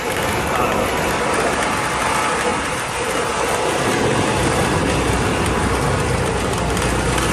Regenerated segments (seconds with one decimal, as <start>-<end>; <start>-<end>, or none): 2.5-3.3